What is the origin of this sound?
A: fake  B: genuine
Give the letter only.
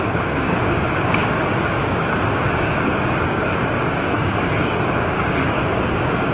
A